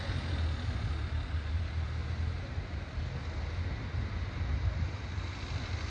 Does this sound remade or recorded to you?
recorded